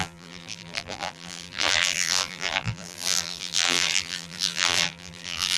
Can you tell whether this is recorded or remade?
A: remade